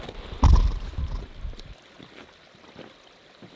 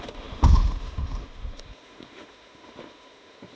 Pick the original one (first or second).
first